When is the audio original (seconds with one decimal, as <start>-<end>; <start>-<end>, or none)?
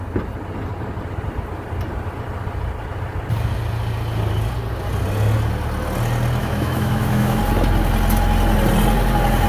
0.0-6.4; 7.4-9.5